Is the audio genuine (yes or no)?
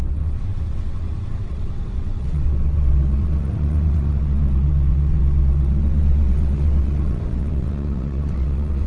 no